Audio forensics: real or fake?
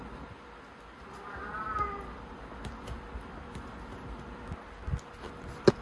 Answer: real